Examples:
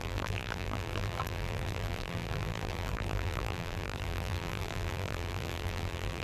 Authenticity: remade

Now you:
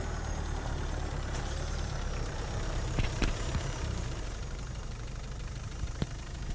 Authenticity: remade